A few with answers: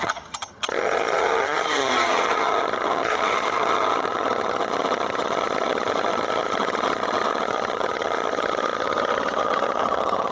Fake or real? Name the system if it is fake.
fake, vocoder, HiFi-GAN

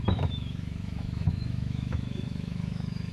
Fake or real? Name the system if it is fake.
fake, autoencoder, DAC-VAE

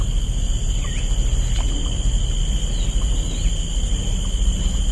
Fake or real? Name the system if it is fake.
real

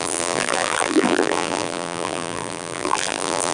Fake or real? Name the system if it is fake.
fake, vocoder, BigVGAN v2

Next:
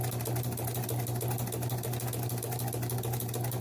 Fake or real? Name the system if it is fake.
real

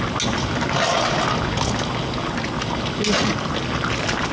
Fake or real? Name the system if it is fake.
real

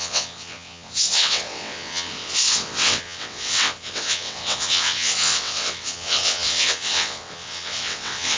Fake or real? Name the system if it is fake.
fake, vocoder, WaveNeXt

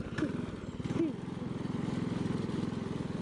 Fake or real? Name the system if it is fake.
real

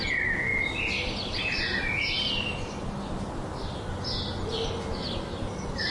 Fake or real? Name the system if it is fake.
real